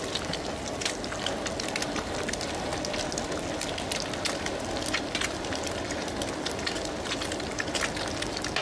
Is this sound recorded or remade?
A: recorded